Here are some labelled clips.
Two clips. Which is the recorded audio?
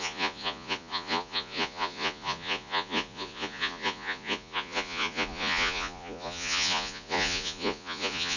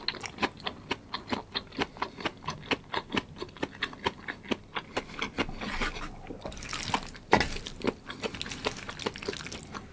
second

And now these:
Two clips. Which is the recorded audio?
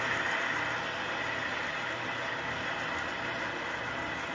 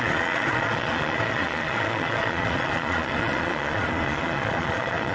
first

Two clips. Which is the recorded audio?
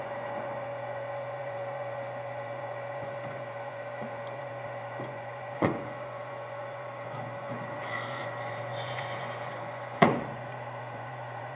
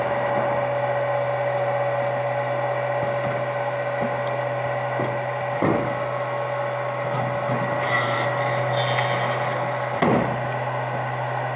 second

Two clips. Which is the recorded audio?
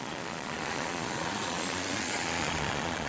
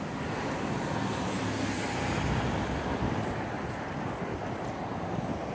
second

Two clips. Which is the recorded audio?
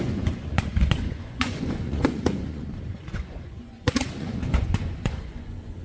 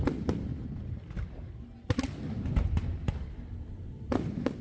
second